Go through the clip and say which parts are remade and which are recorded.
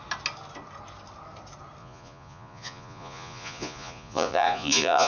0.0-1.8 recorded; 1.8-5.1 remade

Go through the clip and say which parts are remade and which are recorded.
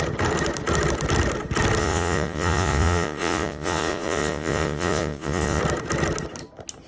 0.0-1.8 recorded; 1.8-5.6 remade; 5.6-6.9 recorded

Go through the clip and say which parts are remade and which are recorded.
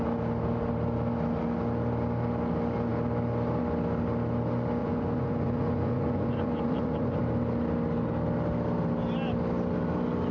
0.0-4.8 recorded; 4.8-7.2 remade; 7.2-10.3 recorded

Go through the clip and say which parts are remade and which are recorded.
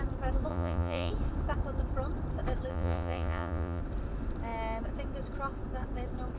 0.0-0.5 recorded; 0.5-1.1 remade; 1.1-2.7 recorded; 2.7-3.8 remade; 3.8-6.4 recorded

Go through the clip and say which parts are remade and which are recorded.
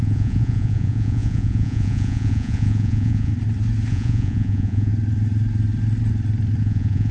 0.0-3.3 remade; 3.3-3.9 recorded; 3.9-4.9 remade; 4.9-6.6 recorded; 6.6-7.1 remade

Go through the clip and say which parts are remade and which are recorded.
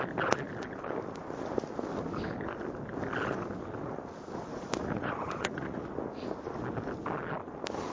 0.0-4.5 recorded; 4.5-5.9 remade; 5.9-7.9 recorded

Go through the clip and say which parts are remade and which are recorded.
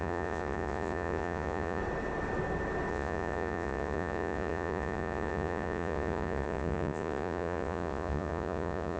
0.0-1.8 remade; 1.8-2.9 recorded; 2.9-9.0 remade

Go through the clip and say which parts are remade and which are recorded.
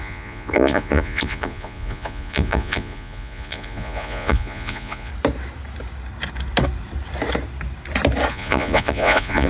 0.0-5.1 remade; 5.1-8.3 recorded; 8.3-9.5 remade